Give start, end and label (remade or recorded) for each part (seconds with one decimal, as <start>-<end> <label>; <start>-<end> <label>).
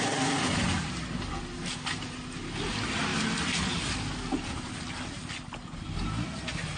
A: 0.0-6.8 recorded